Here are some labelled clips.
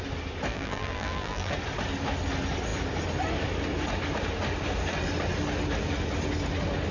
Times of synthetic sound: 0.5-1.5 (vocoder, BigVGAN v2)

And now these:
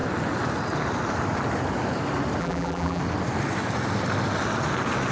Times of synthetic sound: 2.4-3.0 (vocoder, BigVGAN v2)